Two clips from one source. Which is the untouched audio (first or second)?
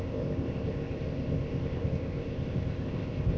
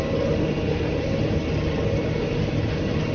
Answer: second